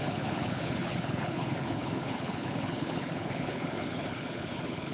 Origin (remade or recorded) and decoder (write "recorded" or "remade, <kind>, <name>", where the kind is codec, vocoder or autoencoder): remade, codec, HILCodec